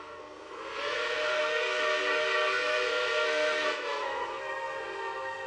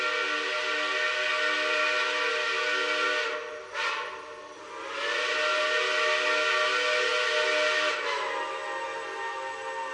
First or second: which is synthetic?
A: first